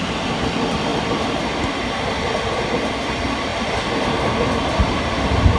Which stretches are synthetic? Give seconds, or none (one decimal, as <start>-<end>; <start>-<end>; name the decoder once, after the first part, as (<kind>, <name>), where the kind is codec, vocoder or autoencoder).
none